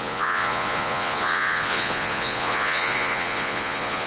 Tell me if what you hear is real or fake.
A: fake